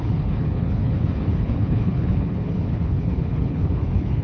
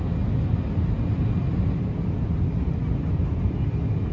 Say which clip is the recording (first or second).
second